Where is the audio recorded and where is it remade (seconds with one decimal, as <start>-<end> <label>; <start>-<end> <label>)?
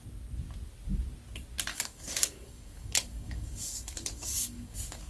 0.0-1.7 recorded; 1.7-5.1 remade